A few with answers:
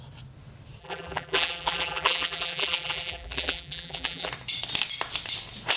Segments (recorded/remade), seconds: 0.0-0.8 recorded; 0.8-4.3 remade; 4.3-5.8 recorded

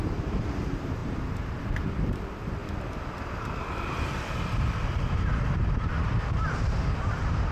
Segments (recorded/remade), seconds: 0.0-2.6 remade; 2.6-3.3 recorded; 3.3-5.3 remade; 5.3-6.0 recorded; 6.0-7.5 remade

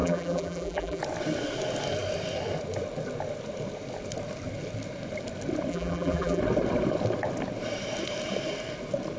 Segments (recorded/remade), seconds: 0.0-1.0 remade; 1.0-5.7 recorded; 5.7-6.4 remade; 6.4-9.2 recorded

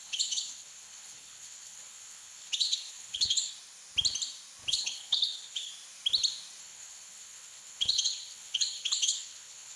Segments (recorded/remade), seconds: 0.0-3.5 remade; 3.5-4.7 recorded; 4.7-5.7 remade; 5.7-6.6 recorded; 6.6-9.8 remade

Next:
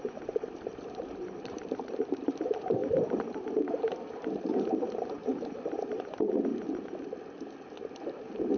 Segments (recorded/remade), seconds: 0.0-6.5 remade; 6.5-7.9 recorded; 7.9-8.6 remade

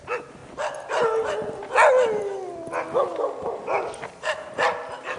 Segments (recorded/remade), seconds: 0.0-5.2 recorded

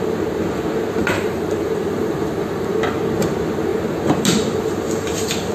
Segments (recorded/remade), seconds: 0.0-1.0 recorded; 1.0-2.7 remade; 2.7-5.5 recorded

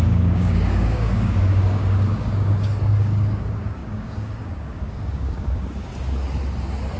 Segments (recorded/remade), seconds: 0.0-5.9 remade; 5.9-7.0 recorded